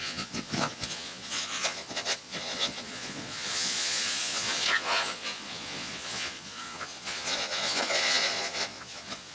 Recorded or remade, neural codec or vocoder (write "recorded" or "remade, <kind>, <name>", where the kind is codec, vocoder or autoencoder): remade, vocoder, Vocos